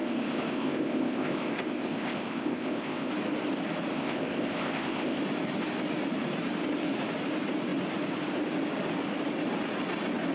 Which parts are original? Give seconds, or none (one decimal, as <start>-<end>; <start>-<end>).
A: 3.1-3.9; 5.2-10.3